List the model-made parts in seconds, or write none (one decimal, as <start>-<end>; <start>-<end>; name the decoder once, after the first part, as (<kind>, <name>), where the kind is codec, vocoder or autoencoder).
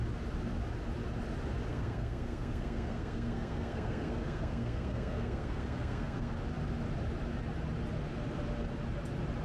1.7-6.3 (codec, SNAC)